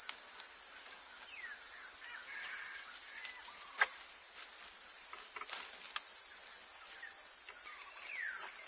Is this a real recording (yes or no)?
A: yes